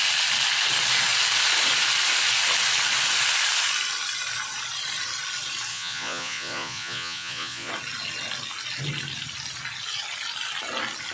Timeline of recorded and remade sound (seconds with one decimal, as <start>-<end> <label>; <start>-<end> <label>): 0.0-5.7 recorded; 5.7-7.7 remade; 7.7-11.1 recorded